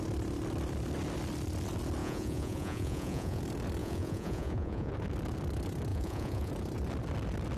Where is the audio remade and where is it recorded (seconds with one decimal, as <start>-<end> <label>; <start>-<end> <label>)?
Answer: 0.0-2.0 recorded; 2.0-3.4 remade; 3.4-3.8 recorded; 3.8-4.9 remade; 4.9-5.9 recorded; 5.9-6.5 remade; 6.5-7.6 recorded